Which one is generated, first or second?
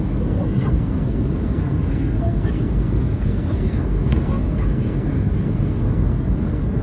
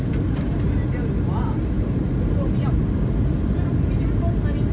first